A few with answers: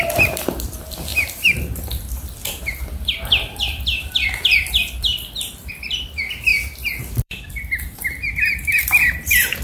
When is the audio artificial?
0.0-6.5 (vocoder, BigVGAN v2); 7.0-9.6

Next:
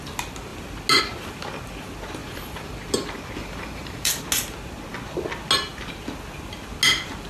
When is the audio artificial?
2.2-2.9 (vocoder, BigVGAN v2); 3.4-4.1

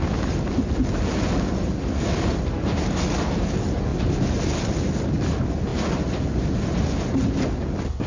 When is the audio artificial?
none

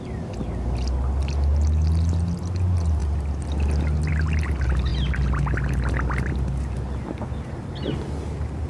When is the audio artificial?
none

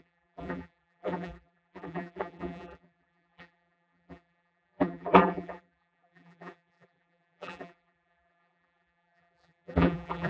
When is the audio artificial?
0.0-10.3 (vocoder, BigVGAN v2)

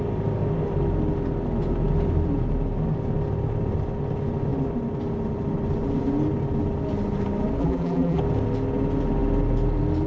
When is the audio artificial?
7.6-8.2 (vocoder, BigVGAN v2)

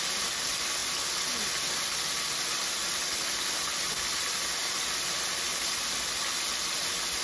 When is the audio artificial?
none

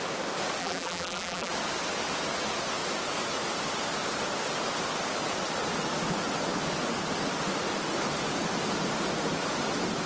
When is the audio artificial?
0.6-1.5 (vocoder, BigVGAN v2)